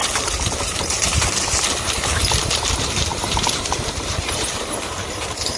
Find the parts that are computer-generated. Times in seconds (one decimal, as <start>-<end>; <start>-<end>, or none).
0.6-1.1; 2.4-5.6